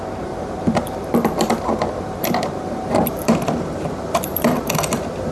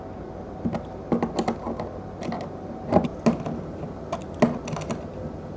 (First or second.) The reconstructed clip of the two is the first